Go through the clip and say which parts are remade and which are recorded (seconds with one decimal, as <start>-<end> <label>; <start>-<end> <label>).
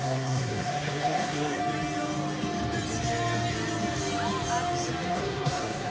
0.0-1.6 remade; 1.6-5.1 recorded; 5.1-5.9 remade